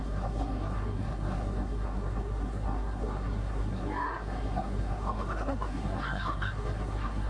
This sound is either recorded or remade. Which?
remade